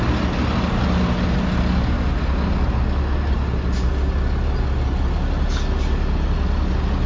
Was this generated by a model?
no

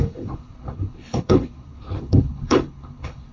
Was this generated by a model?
yes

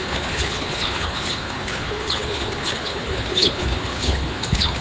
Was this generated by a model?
yes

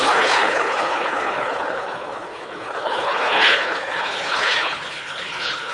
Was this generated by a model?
yes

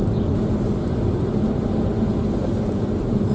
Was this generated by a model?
no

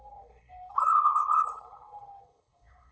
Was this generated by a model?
yes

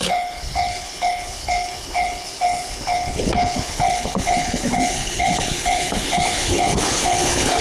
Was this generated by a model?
yes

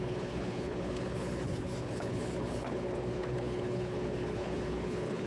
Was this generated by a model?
yes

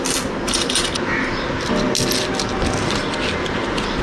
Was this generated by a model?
no